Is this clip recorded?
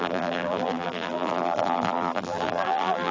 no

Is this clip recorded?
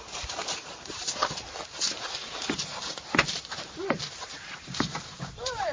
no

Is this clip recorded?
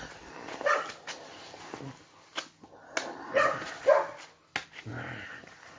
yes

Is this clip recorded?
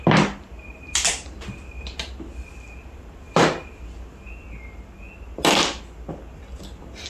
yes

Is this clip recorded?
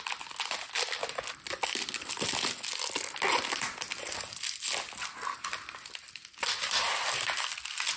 yes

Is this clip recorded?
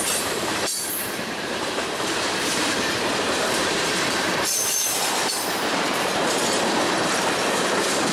no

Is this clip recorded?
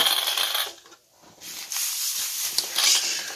no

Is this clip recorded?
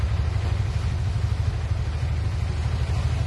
yes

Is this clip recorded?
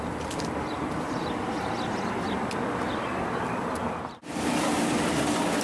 no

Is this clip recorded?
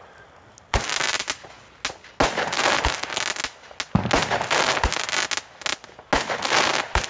yes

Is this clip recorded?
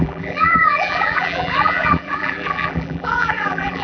no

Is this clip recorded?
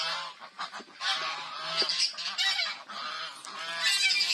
yes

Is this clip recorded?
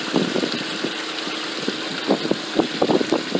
yes